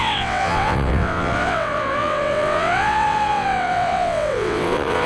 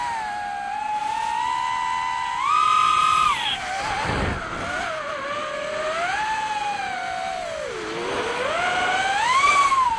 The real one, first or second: second